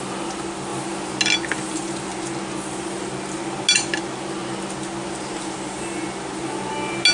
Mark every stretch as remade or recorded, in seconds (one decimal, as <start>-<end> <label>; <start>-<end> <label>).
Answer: 0.0-7.1 recorded